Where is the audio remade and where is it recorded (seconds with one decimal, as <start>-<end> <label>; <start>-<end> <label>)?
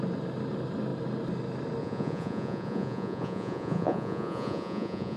0.0-1.8 recorded; 1.8-5.2 remade